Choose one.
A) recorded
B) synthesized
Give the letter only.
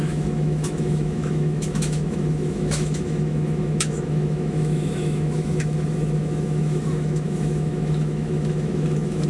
B